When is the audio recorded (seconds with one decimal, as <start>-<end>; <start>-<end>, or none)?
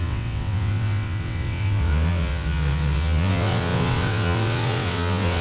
none